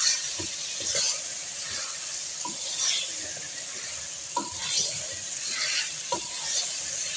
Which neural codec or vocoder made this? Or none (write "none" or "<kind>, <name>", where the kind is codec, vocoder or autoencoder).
none